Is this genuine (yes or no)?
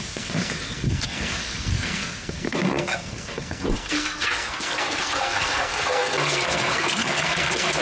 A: no